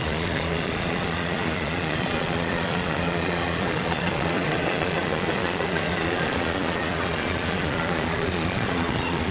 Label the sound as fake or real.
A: fake